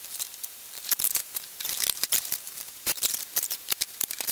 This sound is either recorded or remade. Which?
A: remade